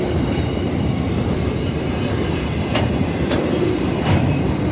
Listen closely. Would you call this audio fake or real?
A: fake